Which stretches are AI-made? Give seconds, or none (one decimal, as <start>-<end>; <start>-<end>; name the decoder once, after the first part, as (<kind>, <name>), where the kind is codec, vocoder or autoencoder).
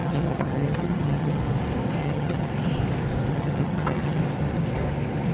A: 0.0-1.4 (vocoder, HiFi-GAN); 2.0-2.5; 3.3-4.2